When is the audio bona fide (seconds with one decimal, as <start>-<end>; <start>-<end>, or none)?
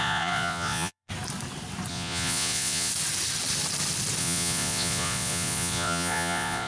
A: 1.1-1.9; 2.9-4.2